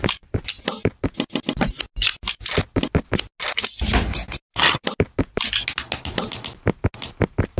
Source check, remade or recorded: recorded